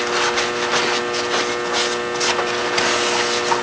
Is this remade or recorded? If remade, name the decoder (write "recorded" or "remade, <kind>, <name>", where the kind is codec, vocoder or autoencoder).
recorded